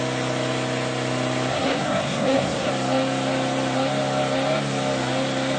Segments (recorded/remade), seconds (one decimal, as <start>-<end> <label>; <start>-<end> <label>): 0.0-1.5 recorded; 1.5-2.7 remade; 2.7-5.6 recorded